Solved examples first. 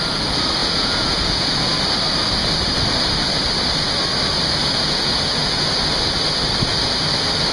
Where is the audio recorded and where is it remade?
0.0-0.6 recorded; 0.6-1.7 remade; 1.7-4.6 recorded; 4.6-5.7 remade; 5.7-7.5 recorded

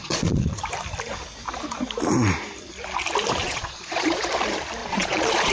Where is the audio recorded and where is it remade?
0.0-0.6 remade; 0.6-3.4 recorded; 3.4-4.2 remade; 4.2-4.8 recorded; 4.8-5.5 remade